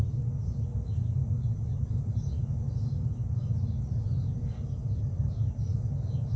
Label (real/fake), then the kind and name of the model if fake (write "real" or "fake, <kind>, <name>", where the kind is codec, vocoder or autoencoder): real